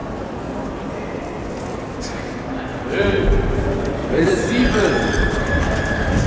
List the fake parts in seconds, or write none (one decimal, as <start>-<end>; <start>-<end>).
2.7-3.3; 4.0-4.5

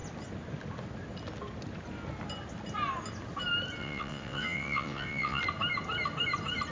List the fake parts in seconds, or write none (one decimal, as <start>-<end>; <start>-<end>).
3.8-5.4

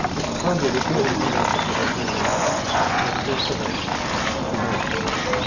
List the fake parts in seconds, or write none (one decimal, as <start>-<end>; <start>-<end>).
1.8-3.1

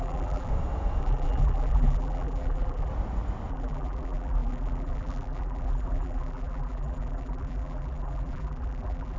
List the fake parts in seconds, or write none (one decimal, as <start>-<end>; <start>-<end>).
0.0-0.5; 1.0-2.9; 3.5-9.2

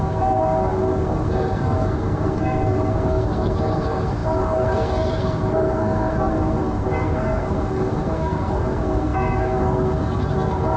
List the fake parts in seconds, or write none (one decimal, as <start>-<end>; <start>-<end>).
0.0-10.8